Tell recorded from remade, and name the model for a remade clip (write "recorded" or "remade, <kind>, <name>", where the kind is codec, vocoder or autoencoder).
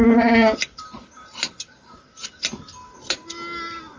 recorded